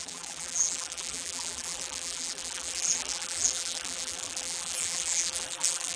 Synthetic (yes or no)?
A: yes